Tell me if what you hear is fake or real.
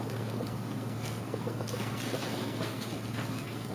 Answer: fake